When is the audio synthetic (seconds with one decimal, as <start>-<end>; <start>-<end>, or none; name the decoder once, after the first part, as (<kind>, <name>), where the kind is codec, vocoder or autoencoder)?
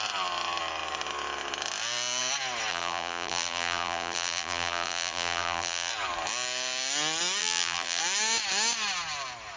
2.7-5.9 (vocoder, BigVGAN v2); 7.4-8.0